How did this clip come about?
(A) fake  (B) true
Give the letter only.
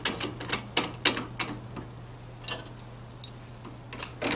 B